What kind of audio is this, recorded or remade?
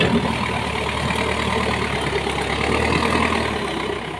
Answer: recorded